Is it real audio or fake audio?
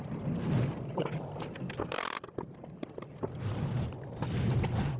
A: real